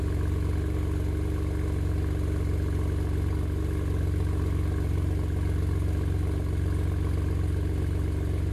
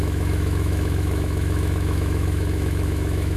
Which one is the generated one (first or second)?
second